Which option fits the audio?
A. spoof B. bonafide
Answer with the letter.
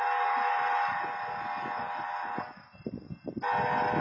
B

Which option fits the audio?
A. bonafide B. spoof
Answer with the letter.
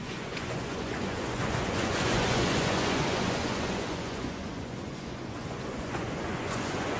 B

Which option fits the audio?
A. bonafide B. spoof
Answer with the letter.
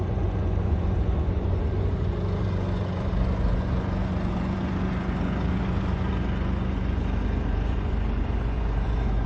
B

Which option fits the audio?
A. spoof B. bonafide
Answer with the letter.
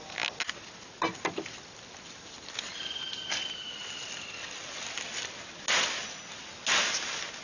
B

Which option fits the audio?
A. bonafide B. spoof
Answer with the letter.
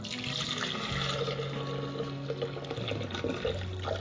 A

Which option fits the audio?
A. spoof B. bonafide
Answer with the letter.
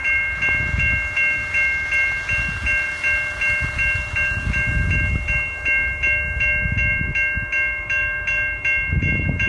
B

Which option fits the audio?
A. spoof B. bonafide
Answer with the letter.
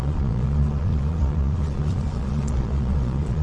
A